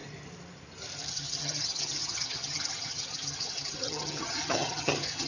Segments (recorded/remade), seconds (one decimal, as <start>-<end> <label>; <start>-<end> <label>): 0.0-1.1 recorded; 1.1-5.3 remade